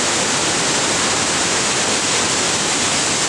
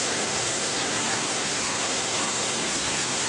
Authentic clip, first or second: first